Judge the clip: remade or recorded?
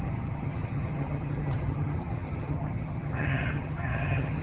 remade